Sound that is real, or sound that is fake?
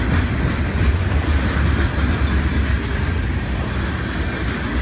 real